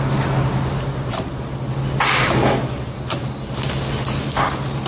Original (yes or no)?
yes